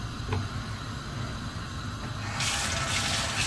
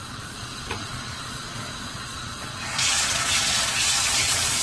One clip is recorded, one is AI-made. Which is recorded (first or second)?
first